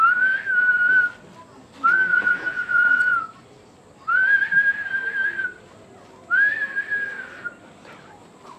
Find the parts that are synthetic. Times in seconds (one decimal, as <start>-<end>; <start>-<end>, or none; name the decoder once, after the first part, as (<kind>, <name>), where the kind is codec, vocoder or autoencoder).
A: 2.1-3.2 (vocoder, Vocos)